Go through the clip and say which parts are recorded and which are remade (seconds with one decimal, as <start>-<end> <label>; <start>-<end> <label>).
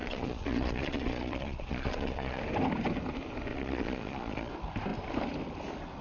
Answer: 0.0-2.4 remade; 2.4-3.5 recorded; 3.5-4.5 remade; 4.5-6.0 recorded